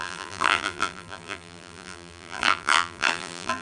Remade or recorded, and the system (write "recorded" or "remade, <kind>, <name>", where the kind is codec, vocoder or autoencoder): remade, vocoder, BigVGAN v2